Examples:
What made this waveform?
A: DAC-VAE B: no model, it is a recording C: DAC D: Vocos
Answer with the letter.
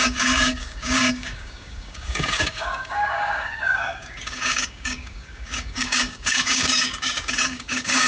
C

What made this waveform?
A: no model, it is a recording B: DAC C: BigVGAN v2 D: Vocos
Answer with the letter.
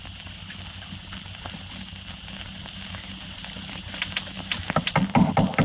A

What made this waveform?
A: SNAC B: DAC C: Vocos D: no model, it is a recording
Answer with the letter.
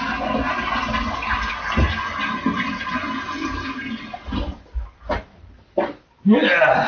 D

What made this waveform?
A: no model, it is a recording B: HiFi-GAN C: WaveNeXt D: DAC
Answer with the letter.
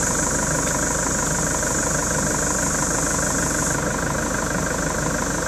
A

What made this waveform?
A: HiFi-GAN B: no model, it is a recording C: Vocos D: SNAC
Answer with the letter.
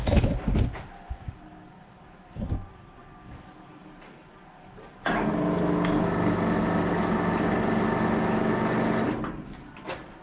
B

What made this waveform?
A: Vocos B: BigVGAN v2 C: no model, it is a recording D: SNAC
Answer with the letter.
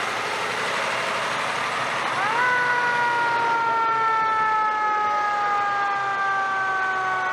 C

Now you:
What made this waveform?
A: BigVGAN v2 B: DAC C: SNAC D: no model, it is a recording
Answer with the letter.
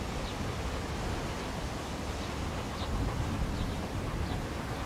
D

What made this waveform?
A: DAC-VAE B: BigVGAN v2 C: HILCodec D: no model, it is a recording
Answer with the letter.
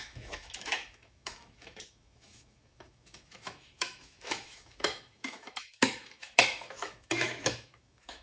A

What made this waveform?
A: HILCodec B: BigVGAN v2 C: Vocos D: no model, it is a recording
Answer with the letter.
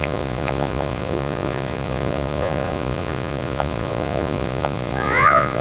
C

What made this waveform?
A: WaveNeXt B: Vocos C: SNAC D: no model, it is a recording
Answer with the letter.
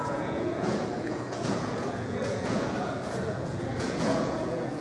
B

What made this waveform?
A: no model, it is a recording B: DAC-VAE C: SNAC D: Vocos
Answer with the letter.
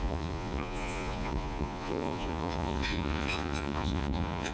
D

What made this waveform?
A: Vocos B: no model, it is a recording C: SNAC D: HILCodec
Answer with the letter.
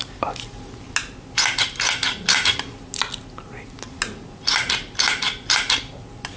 B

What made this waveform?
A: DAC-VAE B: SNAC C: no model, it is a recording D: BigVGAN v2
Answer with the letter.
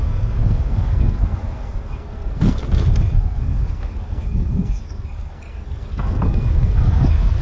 B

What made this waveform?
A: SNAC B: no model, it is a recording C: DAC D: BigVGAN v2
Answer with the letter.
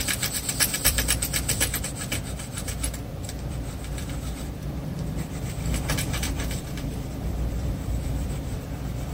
D